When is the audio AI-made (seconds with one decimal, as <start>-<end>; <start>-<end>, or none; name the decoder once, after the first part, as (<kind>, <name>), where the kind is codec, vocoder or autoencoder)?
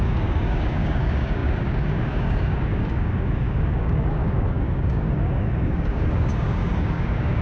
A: 0.0-7.4 (codec, DAC)